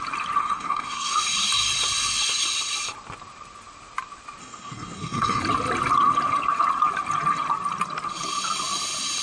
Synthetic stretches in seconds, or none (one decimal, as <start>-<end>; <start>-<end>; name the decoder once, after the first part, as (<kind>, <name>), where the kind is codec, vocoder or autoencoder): 0.4-1.1 (codec, SNAC); 4.4-5.4